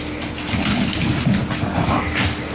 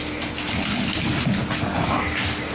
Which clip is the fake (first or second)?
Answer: first